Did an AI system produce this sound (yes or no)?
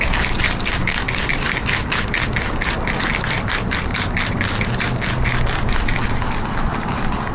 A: no